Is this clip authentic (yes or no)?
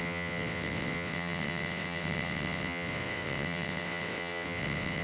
no